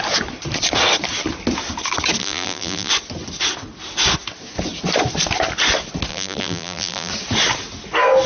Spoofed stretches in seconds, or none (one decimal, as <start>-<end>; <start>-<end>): 2.2-2.9; 6.1-7.1